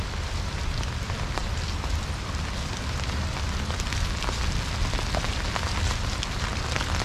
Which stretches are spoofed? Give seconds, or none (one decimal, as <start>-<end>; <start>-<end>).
none

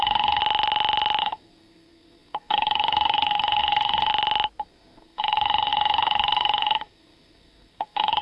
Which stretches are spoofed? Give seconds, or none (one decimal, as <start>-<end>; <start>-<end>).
0.0-0.4; 1.2-4.1; 4.6-8.2

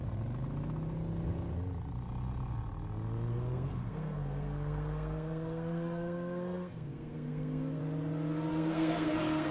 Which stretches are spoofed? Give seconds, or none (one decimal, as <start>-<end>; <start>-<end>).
3.3-7.8; 8.5-9.5